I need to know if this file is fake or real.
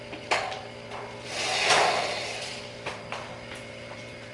real